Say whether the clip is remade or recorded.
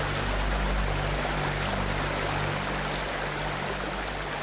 recorded